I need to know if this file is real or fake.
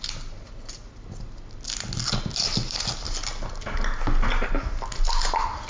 real